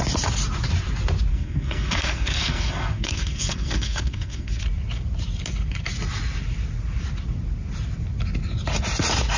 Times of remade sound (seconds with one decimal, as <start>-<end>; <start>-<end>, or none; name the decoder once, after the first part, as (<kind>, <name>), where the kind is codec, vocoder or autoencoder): 1.3-4.6 (codec, SNAC)